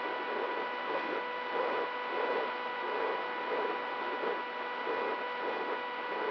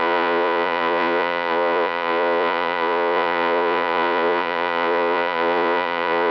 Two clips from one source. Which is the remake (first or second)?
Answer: second